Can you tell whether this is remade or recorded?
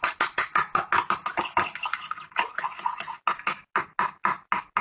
recorded